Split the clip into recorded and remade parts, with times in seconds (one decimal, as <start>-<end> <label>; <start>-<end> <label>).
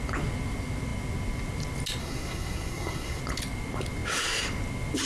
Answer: 0.0-2.0 recorded; 2.0-3.2 remade; 3.2-5.1 recorded